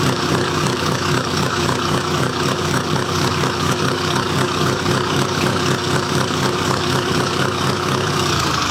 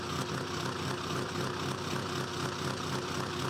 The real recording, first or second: second